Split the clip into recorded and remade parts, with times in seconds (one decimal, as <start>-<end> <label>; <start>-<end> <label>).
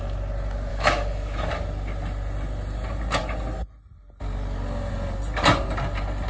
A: 0.0-0.7 recorded; 0.7-1.5 remade; 1.5-6.3 recorded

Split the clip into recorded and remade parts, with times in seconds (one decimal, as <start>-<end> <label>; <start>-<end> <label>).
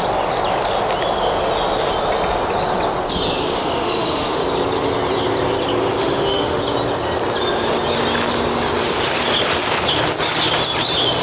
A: 0.0-3.5 recorded; 3.5-4.4 remade; 4.4-6.0 recorded; 6.0-6.6 remade; 6.6-11.2 recorded